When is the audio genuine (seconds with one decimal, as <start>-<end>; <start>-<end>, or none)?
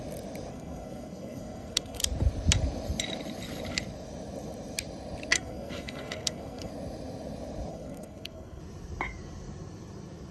0.0-0.5; 2.0-5.3; 6.7-7.7; 8.6-10.3